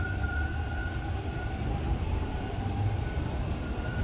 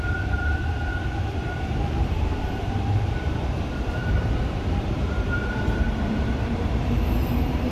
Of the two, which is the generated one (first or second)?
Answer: second